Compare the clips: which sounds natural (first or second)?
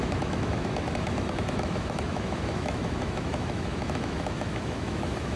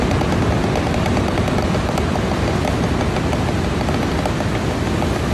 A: second